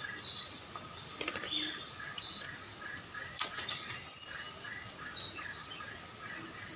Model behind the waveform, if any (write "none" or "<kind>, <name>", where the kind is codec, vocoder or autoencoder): none